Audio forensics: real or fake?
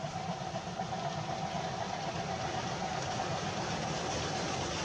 real